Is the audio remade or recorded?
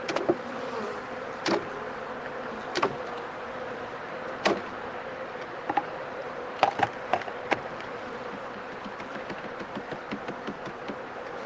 recorded